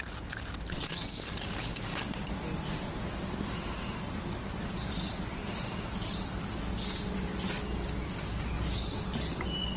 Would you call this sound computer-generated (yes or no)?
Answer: no